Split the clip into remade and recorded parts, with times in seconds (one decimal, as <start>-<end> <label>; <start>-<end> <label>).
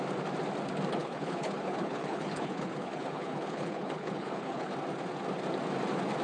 0.0-1.0 recorded; 1.0-4.7 remade; 4.7-6.2 recorded